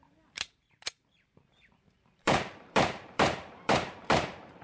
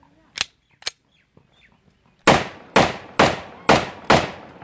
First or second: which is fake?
first